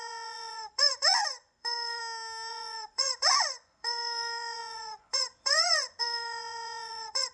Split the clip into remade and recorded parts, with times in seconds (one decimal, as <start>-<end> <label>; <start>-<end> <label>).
0.0-2.0 remade; 2.0-2.5 recorded; 2.5-7.3 remade